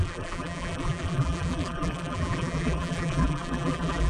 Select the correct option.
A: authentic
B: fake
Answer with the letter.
B